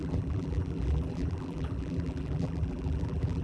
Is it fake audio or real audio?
fake